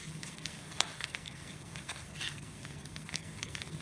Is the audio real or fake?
fake